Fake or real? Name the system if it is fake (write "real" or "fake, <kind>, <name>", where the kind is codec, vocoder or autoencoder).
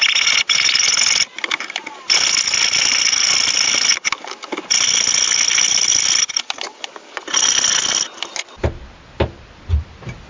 real